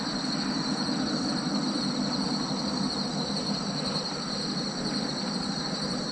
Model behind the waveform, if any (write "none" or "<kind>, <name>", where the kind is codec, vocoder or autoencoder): none